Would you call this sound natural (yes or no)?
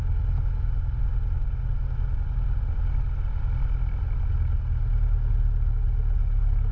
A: yes